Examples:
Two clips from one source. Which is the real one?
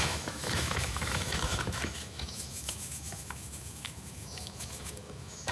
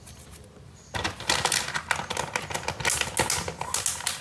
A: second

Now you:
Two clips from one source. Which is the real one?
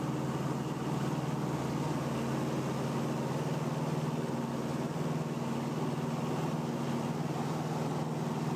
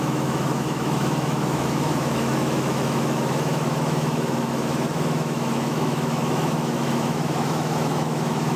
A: first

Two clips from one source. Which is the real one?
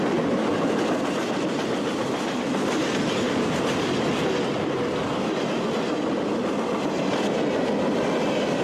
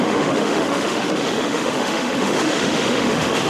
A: first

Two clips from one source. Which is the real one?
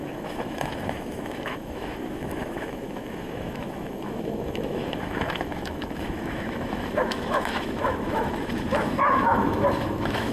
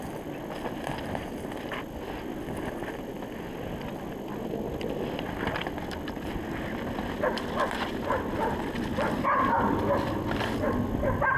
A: second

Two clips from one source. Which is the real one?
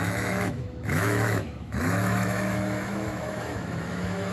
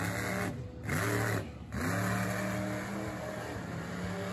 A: second